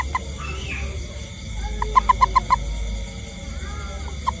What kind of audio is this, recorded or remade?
recorded